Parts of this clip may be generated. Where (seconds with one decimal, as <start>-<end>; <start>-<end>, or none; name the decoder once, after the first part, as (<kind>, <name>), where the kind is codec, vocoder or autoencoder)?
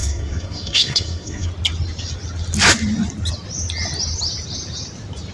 0.0-1.5 (codec, SNAC)